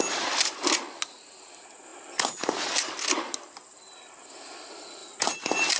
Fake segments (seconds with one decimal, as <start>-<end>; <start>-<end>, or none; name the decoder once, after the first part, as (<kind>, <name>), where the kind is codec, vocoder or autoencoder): 1.9-2.8 (vocoder, BigVGAN v2); 5.0-5.8